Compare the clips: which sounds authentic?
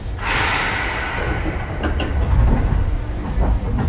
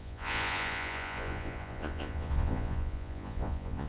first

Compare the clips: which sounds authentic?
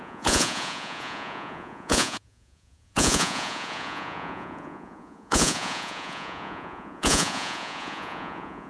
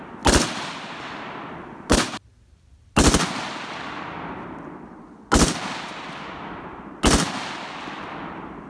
second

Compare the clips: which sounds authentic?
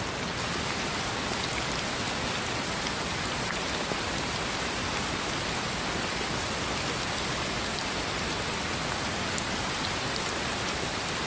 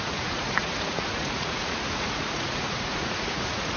first